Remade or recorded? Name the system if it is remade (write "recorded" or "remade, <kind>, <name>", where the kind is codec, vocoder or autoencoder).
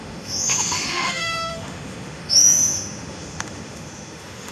remade, autoencoder, DAC-VAE